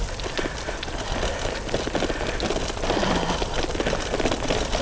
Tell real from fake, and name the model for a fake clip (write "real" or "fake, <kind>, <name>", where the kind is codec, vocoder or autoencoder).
real